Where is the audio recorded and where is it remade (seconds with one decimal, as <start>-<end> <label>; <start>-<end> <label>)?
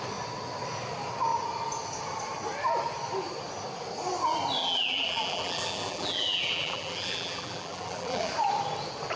0.0-4.6 recorded; 4.6-8.3 remade; 8.3-9.2 recorded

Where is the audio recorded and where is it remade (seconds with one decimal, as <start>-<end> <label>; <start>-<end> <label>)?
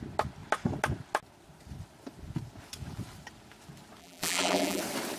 0.0-4.0 recorded; 4.0-4.8 remade; 4.8-5.2 recorded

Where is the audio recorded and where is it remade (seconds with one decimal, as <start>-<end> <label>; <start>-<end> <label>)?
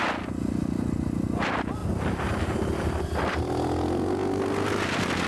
0.0-5.3 recorded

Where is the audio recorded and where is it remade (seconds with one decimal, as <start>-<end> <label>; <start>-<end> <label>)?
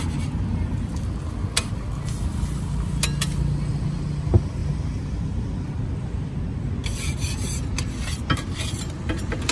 0.0-4.6 recorded; 4.6-6.3 remade; 6.3-9.5 recorded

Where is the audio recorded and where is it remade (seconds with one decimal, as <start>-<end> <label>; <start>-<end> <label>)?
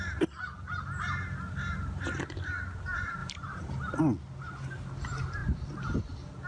0.0-3.2 recorded; 3.2-4.0 remade; 4.0-6.5 recorded